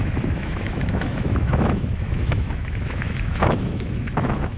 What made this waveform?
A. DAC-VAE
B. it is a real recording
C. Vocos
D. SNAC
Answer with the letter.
A